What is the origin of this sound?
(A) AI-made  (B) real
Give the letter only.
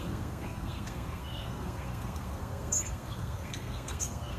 A